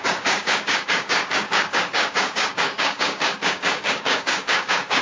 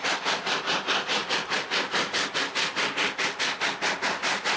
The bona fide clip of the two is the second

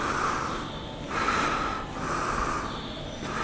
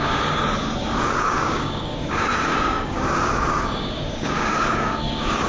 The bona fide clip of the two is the first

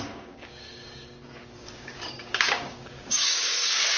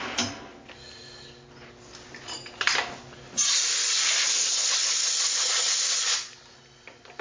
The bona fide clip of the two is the second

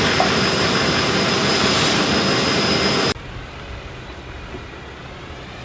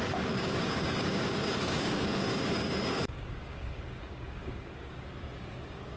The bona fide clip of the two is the first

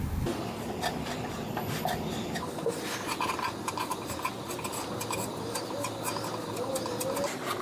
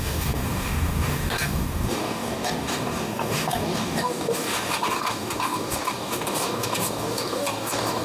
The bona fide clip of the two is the first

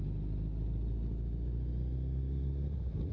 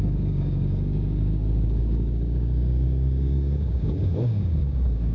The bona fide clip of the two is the first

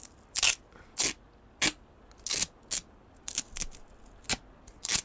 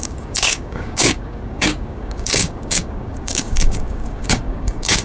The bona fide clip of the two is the first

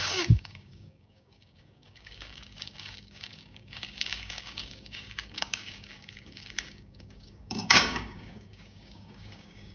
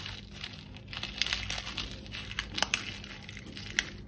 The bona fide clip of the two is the second